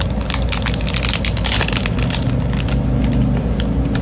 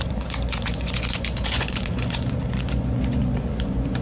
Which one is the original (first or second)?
first